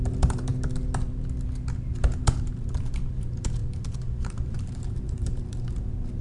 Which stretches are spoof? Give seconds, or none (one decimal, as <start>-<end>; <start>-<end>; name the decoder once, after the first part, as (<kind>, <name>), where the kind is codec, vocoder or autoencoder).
0.0-0.5 (vocoder, BigVGAN v2); 2.2-6.2